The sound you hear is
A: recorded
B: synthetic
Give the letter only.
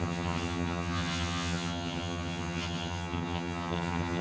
B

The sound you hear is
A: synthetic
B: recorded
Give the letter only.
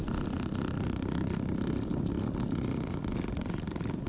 B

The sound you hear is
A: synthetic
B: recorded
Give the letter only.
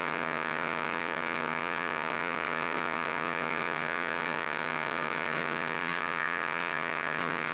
A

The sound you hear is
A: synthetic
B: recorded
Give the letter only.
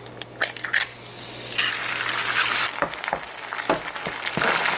B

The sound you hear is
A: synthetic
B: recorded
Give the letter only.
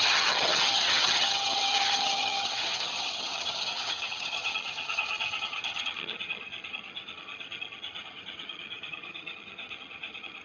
A